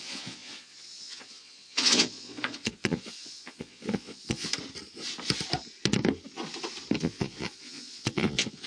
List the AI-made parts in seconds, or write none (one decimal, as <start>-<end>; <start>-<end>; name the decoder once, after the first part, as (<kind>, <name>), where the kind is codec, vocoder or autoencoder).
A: 0.0-4.5 (vocoder, Vocos); 7.0-8.7